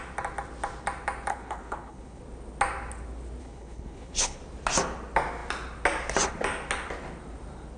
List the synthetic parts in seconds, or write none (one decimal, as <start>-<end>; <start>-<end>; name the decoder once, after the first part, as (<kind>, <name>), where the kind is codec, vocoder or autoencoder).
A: 1.3-2.2 (codec, HILCodec); 3.4-4.4